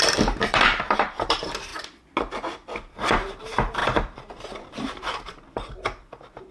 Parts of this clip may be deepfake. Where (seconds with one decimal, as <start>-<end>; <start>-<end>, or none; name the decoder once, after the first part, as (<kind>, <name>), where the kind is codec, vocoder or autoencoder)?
0.0-1.7 (vocoder, BigVGAN v2); 2.9-6.5